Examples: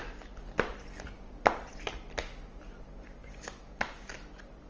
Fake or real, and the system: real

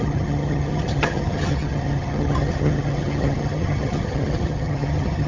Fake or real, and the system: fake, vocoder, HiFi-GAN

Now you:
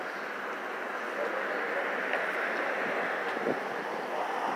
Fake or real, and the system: real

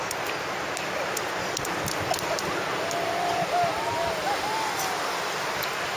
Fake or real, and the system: real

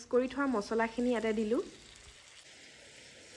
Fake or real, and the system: real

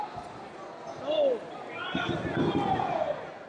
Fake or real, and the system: real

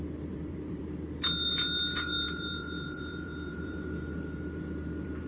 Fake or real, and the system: fake, vocoder, BigVGAN v2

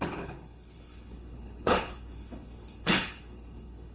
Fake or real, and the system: fake, codec, HILCodec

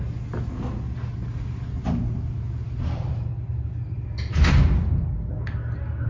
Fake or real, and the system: real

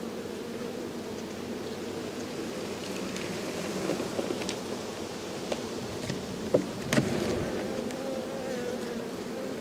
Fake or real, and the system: real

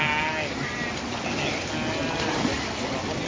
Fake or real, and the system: real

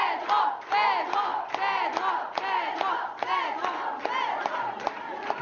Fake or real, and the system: real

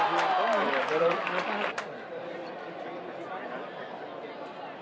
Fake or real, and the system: real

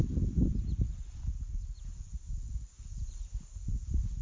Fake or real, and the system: real